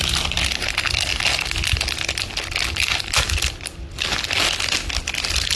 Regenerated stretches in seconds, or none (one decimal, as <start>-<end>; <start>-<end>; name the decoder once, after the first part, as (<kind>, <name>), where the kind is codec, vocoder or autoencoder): none